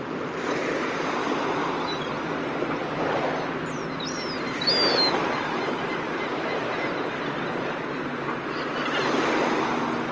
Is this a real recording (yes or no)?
yes